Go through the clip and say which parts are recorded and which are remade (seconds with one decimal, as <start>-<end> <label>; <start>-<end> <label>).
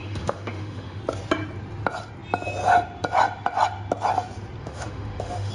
0.0-1.0 remade; 1.0-4.6 recorded; 4.6-5.5 remade